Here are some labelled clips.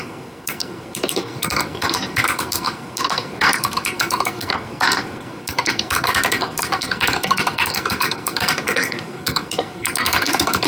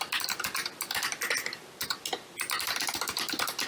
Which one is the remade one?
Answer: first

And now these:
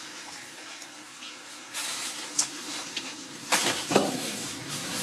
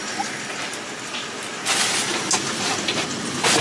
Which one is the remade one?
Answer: first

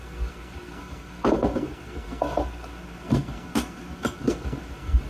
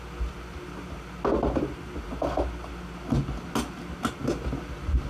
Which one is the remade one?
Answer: first